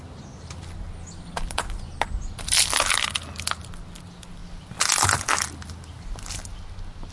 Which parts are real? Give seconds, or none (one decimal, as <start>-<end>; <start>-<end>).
0.0-7.1